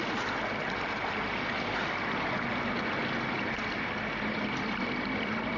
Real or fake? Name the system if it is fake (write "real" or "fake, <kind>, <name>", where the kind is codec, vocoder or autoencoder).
real